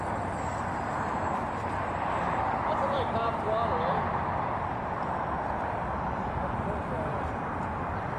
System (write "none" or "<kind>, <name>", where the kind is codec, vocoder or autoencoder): vocoder, BigVGAN v2